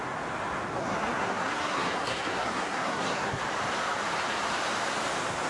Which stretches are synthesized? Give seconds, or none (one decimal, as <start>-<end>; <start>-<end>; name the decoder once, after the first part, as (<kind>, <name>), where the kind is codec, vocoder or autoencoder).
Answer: 0.8-3.4 (codec, SNAC)